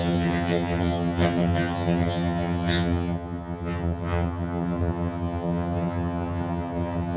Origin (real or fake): fake